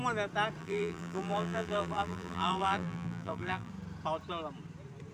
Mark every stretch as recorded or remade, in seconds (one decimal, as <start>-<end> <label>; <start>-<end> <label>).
0.0-0.6 recorded; 0.6-3.7 remade; 3.7-5.1 recorded

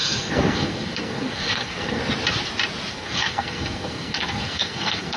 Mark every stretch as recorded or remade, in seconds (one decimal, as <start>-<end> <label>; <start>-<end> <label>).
0.0-2.0 remade; 2.0-2.9 recorded; 2.9-5.2 remade